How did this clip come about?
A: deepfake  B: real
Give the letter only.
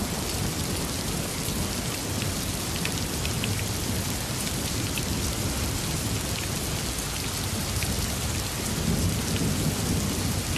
B